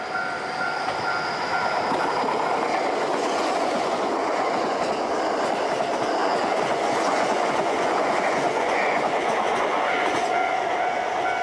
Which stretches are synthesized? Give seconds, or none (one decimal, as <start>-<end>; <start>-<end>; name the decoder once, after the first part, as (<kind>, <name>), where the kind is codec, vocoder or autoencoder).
3.1-4.8 (vocoder, Vocos); 6.2-11.0